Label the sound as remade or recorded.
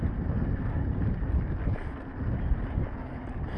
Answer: recorded